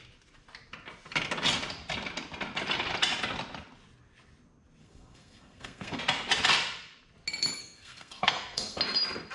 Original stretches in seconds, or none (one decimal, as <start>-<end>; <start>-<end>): 0.0-4.8; 6.0-7.6; 8.8-9.3